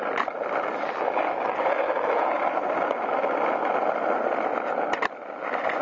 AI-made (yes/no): no